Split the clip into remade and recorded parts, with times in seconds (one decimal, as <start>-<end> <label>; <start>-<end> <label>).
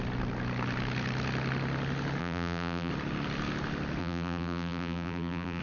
0.0-2.2 recorded; 2.2-2.9 remade; 2.9-4.0 recorded; 4.0-5.6 remade